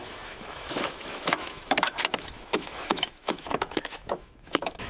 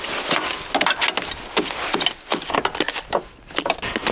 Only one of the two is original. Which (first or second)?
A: second